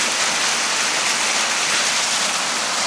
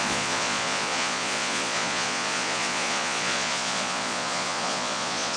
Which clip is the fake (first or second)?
second